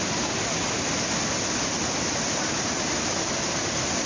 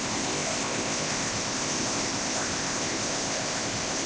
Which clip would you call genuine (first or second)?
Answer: first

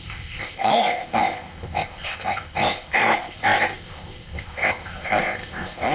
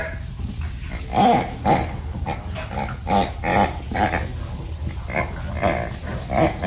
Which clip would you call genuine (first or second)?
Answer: second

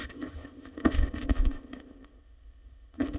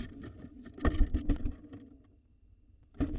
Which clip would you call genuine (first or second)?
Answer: second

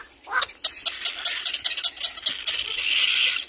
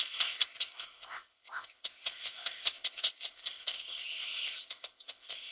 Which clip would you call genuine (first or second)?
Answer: first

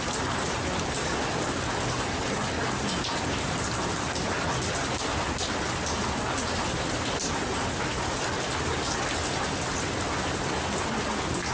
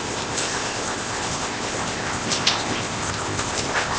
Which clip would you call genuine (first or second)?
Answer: first